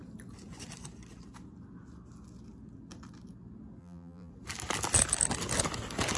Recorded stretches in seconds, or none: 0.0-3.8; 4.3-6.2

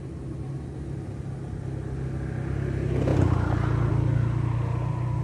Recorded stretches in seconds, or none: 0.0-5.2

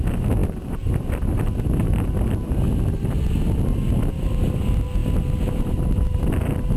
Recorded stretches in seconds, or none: 0.0-6.8

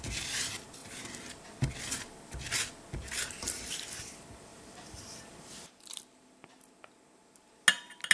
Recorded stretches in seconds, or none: 0.0-4.5; 5.7-8.1

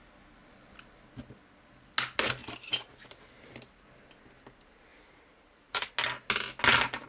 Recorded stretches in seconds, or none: 0.0-2.4; 3.6-4.9; 5.9-7.1